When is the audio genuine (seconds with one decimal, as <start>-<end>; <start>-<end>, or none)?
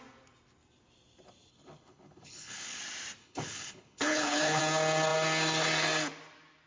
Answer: 0.0-1.5; 2.8-3.2; 4.6-6.7